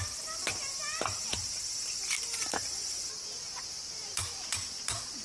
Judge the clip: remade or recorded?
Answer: recorded